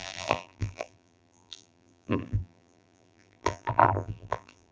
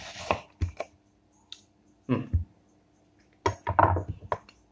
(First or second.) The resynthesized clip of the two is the first